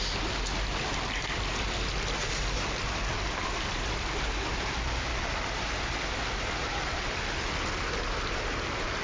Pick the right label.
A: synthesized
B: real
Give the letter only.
B